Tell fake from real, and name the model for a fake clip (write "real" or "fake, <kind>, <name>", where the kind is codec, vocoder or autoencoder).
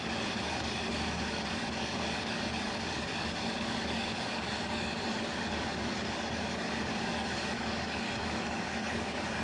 fake, codec, DAC